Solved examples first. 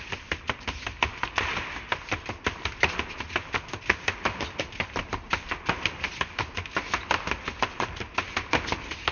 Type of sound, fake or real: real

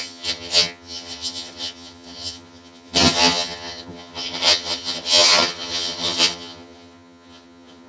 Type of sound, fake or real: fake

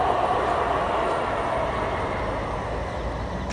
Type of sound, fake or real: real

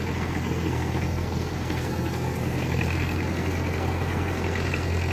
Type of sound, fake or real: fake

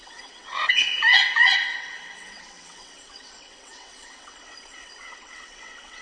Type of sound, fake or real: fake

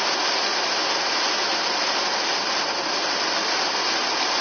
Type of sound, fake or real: real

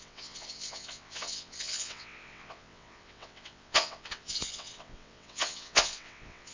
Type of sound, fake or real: fake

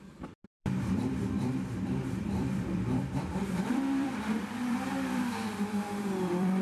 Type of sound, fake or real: fake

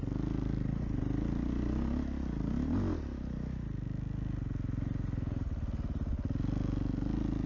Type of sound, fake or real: real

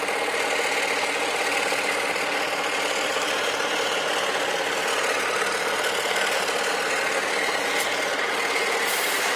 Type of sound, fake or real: real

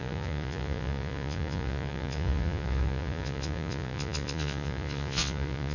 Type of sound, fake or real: fake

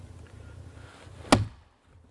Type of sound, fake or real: real